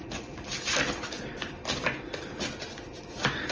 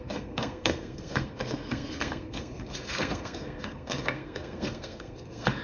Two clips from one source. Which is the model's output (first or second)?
second